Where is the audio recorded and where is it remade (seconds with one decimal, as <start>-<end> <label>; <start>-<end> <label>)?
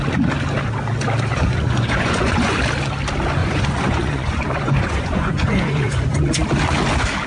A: 0.0-1.3 recorded; 1.3-2.6 remade; 2.6-3.4 recorded; 3.4-6.4 remade; 6.4-7.3 recorded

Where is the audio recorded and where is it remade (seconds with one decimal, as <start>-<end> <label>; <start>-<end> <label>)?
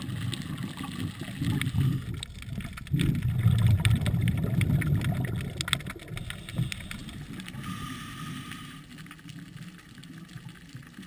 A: 0.0-11.1 recorded